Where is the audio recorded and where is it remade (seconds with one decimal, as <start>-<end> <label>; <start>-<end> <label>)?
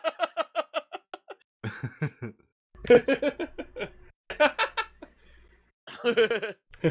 0.0-6.9 recorded